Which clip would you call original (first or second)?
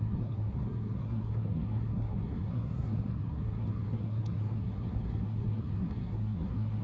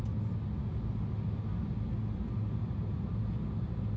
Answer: second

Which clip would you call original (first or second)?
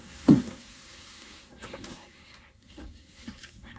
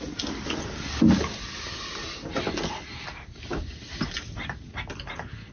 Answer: second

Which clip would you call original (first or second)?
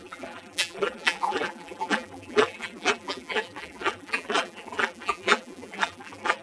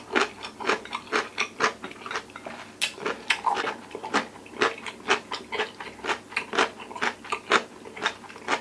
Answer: second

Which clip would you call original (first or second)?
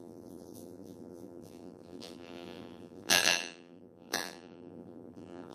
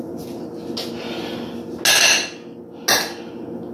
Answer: second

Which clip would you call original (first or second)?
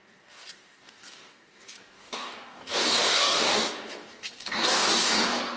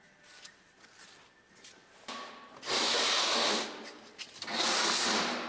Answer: second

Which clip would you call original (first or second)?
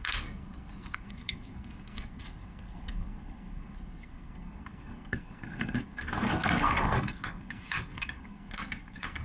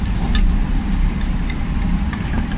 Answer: second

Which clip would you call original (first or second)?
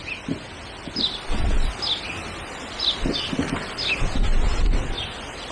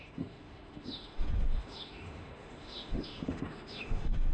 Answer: first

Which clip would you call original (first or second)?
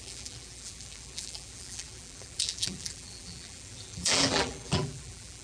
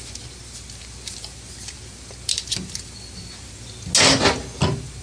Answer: second